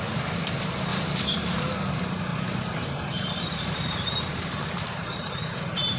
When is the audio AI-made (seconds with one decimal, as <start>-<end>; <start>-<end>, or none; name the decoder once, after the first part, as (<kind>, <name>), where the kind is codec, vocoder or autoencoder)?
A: 0.9-1.6 (vocoder, BigVGAN v2); 2.3-6.0